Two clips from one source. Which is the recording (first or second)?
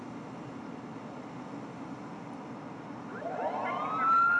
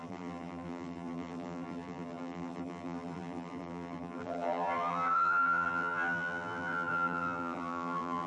first